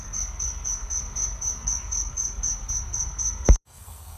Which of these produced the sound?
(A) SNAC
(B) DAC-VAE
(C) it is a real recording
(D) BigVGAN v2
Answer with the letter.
A